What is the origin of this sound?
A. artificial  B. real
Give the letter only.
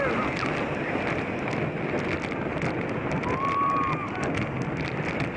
B